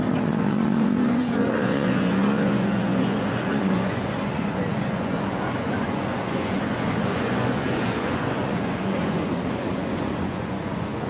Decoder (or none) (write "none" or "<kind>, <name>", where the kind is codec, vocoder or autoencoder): vocoder, Vocos